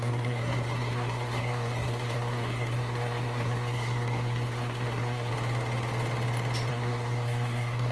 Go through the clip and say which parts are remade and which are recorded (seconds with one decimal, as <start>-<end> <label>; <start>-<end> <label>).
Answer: 0.0-5.3 remade; 5.3-6.7 recorded; 6.7-7.9 remade